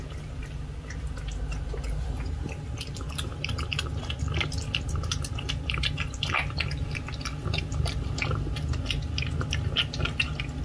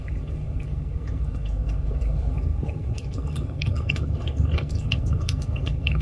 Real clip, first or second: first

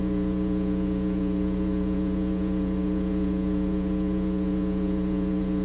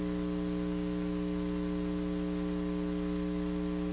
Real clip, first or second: second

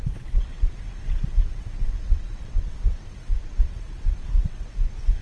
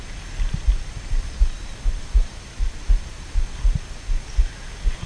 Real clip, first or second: second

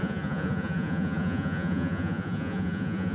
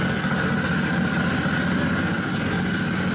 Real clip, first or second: second